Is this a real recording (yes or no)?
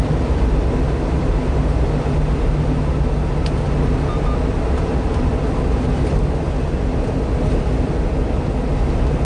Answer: yes